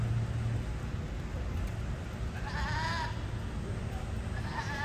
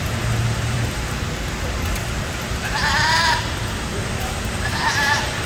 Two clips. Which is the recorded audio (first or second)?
first